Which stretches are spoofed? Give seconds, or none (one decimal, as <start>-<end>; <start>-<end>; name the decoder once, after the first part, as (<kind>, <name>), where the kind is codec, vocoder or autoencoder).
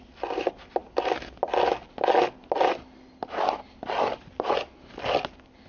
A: none